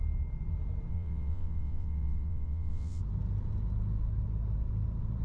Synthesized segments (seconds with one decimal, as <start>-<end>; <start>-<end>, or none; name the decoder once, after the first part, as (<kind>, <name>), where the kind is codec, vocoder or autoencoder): 0.9-3.0 (vocoder, WaveNeXt)